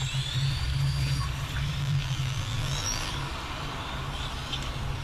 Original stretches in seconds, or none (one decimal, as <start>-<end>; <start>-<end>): 0.0-1.8; 3.1-5.0